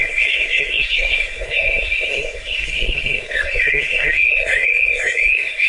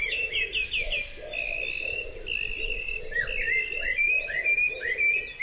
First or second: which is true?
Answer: second